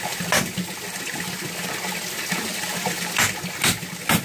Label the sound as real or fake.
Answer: real